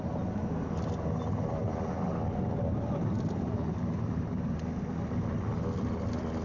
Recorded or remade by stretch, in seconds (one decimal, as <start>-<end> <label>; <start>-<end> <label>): 0.0-6.4 recorded